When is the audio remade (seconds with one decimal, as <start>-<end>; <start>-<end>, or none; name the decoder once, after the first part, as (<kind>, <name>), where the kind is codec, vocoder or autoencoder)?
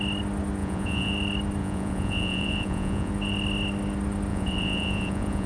0.6-1.1 (vocoder, Vocos); 1.6-3.1; 4.3-5.5